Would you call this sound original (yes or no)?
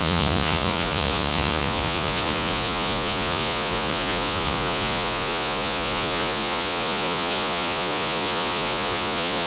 no